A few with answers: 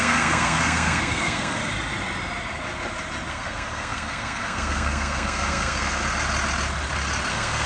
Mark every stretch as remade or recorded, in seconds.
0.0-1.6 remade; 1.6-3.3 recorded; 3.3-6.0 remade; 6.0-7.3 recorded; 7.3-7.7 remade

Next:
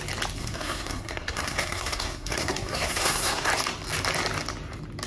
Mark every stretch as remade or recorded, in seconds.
0.0-0.4 recorded; 0.4-3.5 remade; 3.5-5.1 recorded

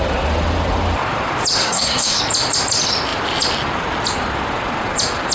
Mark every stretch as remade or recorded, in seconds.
0.0-1.6 recorded; 1.6-2.2 remade; 2.2-5.3 recorded

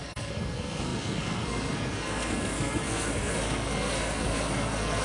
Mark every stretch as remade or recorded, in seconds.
0.0-5.0 remade

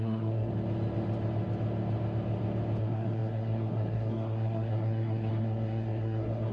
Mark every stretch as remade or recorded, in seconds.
0.0-0.5 remade; 0.5-2.8 recorded; 2.8-6.5 remade